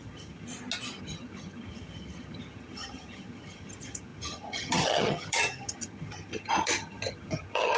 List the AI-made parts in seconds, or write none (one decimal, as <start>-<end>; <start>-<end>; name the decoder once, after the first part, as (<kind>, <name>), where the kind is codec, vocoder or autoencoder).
0.0-0.5 (vocoder, HiFi-GAN); 1.0-7.8